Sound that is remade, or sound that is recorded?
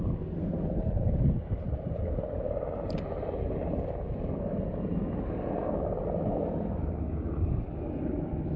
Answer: recorded